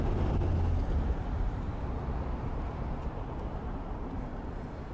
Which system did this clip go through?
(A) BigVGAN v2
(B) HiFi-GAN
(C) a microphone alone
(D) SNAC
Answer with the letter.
A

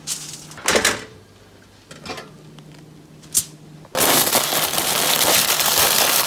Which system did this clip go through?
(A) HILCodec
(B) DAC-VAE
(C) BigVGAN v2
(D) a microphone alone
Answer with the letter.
D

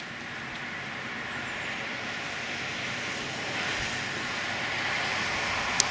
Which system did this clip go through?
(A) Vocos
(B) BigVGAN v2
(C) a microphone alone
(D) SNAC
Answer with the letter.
C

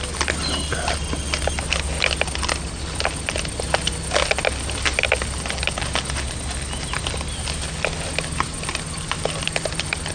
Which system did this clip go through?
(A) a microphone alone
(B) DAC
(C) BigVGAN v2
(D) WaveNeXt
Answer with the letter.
A